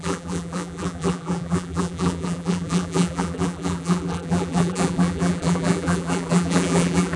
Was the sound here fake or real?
fake